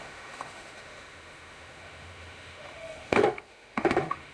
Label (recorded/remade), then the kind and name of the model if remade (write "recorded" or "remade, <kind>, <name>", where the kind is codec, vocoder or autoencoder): remade, autoencoder, DAC-VAE